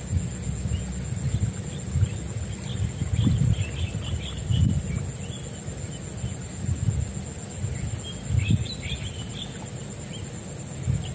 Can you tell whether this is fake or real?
real